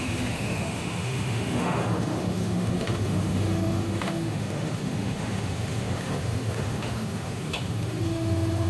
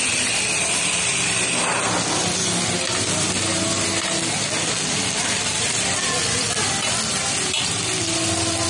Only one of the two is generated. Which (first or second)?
first